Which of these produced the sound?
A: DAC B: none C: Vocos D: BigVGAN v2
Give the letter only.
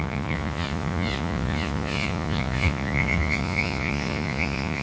C